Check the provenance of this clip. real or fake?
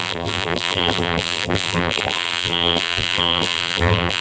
fake